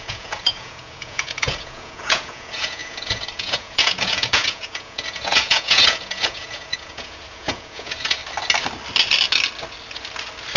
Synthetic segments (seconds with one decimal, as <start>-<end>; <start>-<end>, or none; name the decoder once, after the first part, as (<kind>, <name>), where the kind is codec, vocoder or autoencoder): 0.0-8.2 (vocoder, Vocos)